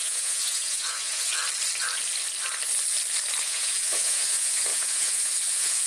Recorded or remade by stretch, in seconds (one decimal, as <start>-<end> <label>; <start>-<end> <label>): 0.0-1.3 remade; 1.3-3.4 recorded; 3.4-5.9 remade